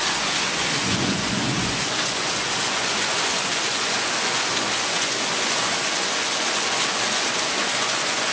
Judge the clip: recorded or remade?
remade